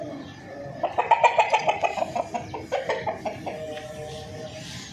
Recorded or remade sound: recorded